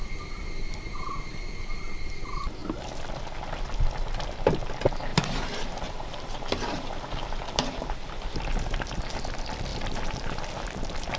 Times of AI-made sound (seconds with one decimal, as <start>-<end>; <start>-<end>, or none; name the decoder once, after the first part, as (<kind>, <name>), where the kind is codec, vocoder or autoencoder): 5.1-9.1 (vocoder, BigVGAN v2); 9.7-11.2